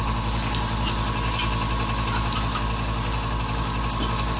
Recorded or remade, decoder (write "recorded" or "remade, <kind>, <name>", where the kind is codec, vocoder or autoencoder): recorded